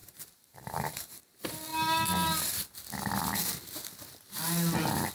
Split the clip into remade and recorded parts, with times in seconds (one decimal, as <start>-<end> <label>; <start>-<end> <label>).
0.0-1.2 remade; 1.2-5.1 recorded